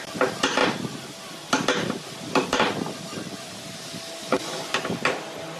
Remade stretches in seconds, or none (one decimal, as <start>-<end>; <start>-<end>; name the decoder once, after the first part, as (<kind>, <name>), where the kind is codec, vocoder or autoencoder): 4.2-4.7 (vocoder, Vocos)